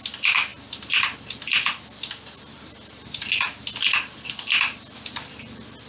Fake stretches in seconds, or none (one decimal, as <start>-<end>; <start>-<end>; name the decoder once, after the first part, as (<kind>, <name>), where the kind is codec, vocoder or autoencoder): none